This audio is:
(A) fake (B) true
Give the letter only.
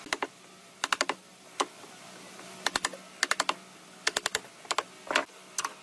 B